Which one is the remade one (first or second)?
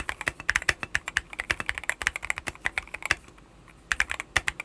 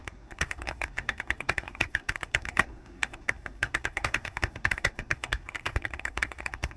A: second